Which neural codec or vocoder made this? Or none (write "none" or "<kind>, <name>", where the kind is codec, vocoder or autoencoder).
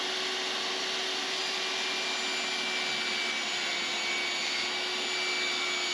none